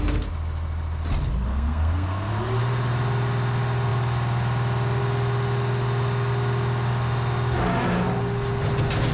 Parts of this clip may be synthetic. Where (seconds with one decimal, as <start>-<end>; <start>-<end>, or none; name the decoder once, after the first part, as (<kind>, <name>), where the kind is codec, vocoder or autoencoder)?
1.5-2.3 (codec, SNAC)